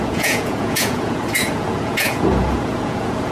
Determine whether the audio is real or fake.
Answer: fake